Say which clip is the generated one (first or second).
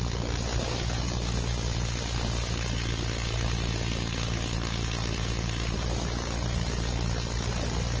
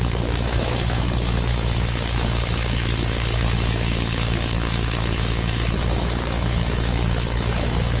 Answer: second